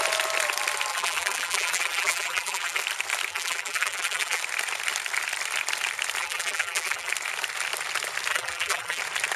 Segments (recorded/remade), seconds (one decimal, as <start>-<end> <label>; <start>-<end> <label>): 0.0-0.9 recorded; 0.9-2.8 remade; 2.8-3.3 recorded; 3.3-4.4 remade; 4.4-6.2 recorded; 6.2-7.1 remade; 7.1-8.3 recorded; 8.3-9.0 remade; 9.0-9.4 recorded